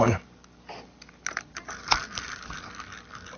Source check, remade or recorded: recorded